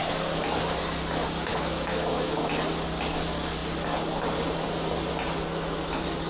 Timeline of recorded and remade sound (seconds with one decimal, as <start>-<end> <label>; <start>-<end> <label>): 0.0-1.5 recorded; 1.5-2.4 remade; 2.4-6.3 recorded